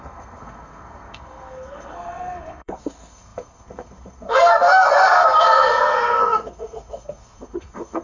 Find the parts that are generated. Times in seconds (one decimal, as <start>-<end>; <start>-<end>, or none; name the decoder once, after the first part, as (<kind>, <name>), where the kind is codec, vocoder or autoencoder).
0.0-8.0 (codec, SNAC)